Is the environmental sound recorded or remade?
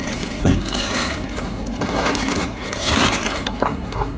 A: remade